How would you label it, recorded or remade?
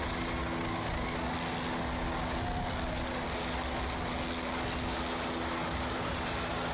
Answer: recorded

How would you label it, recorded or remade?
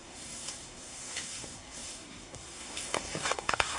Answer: remade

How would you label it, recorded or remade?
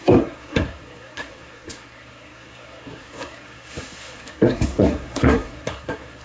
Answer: remade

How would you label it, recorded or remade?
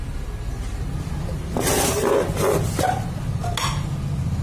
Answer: recorded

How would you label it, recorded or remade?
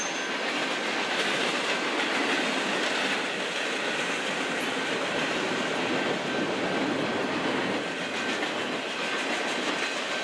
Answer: recorded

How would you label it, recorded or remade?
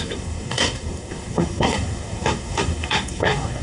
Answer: remade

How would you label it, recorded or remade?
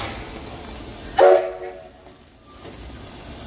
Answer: recorded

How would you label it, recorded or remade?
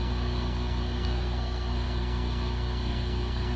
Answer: remade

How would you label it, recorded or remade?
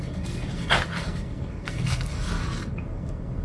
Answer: remade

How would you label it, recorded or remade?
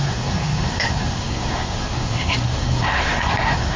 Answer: remade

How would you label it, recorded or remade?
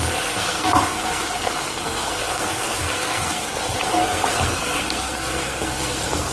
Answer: remade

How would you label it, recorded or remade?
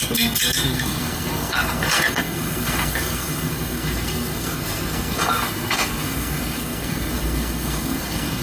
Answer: remade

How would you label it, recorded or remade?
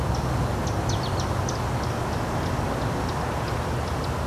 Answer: recorded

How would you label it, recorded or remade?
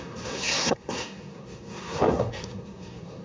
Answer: remade